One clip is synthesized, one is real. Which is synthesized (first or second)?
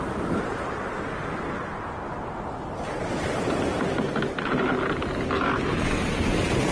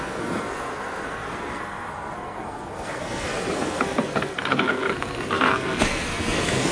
second